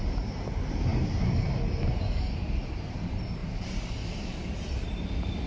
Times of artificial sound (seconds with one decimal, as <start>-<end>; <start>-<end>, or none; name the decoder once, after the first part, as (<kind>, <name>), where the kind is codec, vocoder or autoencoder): 0.0-5.5 (vocoder, BigVGAN v2)